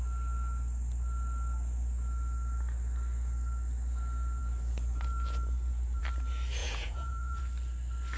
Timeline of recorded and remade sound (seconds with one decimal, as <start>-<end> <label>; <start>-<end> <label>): 0.0-6.6 recorded; 6.6-7.4 remade; 7.4-8.2 recorded